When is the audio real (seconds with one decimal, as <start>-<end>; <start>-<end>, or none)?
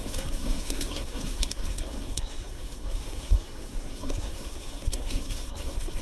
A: none